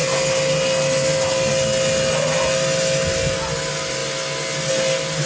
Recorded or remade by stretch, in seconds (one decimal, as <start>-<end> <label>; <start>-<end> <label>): 0.0-5.3 recorded